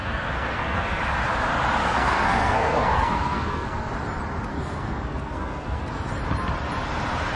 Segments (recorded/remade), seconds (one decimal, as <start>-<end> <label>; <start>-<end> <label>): 0.0-1.0 remade; 1.0-1.8 recorded; 1.8-3.9 remade; 3.9-4.5 recorded; 4.5-6.1 remade; 6.1-7.4 recorded